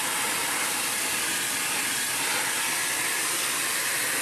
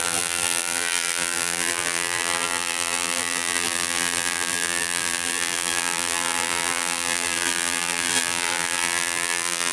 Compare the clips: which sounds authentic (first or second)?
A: first